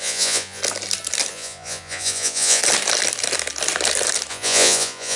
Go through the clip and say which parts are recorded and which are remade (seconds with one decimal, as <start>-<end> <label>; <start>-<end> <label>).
0.0-0.6 remade; 0.6-1.3 recorded; 1.3-2.6 remade; 2.6-4.3 recorded; 4.3-5.2 remade